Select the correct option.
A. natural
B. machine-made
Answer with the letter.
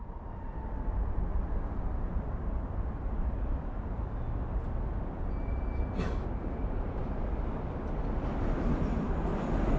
A